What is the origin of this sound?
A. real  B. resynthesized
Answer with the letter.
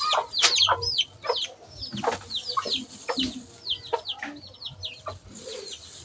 A